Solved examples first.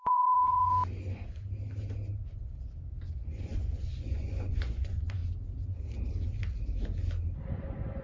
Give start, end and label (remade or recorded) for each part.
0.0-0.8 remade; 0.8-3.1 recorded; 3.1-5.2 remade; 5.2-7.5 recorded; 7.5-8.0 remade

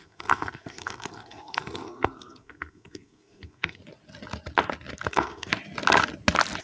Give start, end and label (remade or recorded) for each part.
0.0-3.8 remade; 3.8-5.1 recorded; 5.1-5.5 remade; 5.5-6.6 recorded